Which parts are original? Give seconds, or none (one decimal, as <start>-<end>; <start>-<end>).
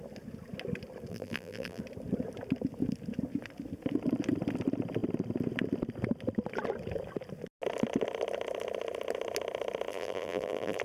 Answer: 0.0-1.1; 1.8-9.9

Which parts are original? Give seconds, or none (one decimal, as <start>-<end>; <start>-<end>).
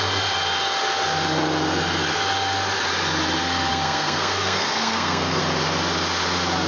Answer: 0.0-3.7; 5.4-6.7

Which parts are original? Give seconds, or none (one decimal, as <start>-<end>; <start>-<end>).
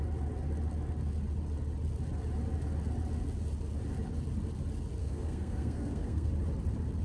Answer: 0.0-5.0; 6.3-7.0